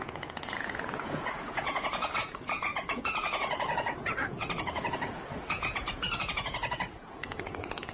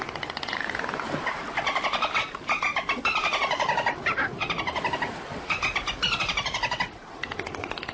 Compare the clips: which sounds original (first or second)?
second